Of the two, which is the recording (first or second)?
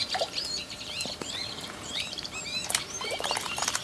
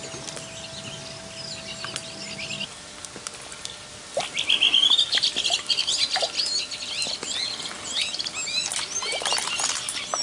second